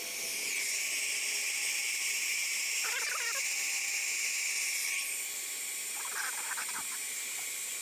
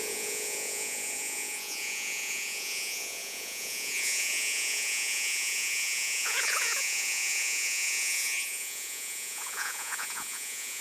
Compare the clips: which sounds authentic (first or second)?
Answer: first